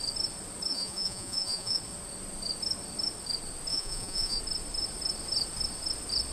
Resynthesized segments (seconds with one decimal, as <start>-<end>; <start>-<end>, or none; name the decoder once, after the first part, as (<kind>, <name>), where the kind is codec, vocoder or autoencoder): 0.7-1.8 (vocoder, Vocos); 3.7-4.4